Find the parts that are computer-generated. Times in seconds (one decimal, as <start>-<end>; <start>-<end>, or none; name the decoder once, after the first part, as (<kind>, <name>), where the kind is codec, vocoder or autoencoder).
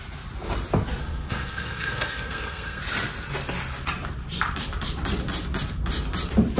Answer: 1.0-2.8 (codec, SNAC)